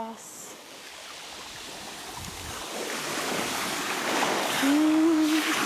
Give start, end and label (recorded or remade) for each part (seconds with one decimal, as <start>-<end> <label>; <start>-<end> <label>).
0.0-1.0 remade; 1.0-2.2 recorded; 2.2-2.6 remade; 2.6-3.3 recorded; 3.3-5.7 remade